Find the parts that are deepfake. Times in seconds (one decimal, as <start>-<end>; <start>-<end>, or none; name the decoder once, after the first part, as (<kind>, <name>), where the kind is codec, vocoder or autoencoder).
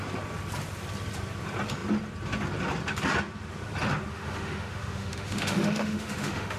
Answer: 4.1-6.6 (autoencoder, DAC-VAE)